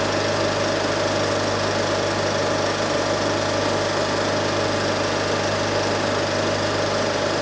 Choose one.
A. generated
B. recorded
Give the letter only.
B